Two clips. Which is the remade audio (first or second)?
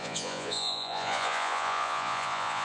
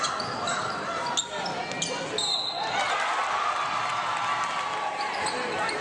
first